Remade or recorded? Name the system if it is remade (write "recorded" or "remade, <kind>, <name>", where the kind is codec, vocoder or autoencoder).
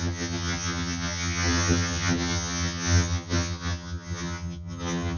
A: remade, vocoder, HiFi-GAN